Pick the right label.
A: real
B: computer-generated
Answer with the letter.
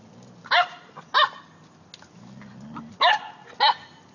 A